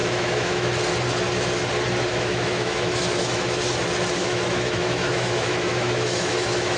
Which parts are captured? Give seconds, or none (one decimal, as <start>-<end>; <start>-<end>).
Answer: 0.7-2.1; 3.6-4.2